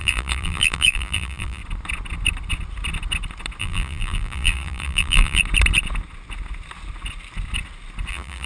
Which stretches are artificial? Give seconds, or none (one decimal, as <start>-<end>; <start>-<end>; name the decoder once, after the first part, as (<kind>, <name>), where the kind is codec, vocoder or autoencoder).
0.0-1.6 (vocoder, BigVGAN v2); 3.6-5.4; 8.1-8.5